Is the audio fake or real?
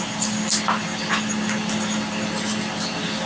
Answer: real